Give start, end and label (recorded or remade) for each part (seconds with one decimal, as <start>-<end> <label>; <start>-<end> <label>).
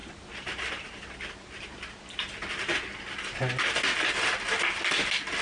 0.0-5.4 recorded